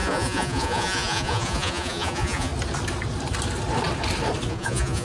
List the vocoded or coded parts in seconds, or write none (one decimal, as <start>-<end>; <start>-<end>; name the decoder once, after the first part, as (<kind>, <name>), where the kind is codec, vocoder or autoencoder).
0.0-2.5 (vocoder, Vocos); 4.5-5.0

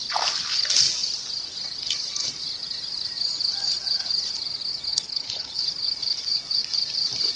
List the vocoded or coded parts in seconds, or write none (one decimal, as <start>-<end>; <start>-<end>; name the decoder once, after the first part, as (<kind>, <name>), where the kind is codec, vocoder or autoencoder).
4.9-5.6 (codec, HILCodec)

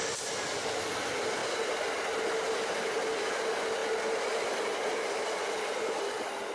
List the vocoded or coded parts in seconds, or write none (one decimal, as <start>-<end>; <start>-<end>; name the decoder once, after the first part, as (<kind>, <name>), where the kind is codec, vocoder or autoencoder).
none

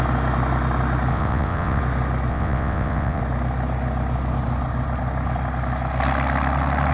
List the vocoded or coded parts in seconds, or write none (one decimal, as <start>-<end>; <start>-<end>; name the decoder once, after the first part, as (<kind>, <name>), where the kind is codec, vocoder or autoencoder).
1.1-1.8 (vocoder, WaveNeXt); 2.3-3.2